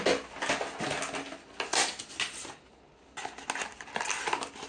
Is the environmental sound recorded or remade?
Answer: recorded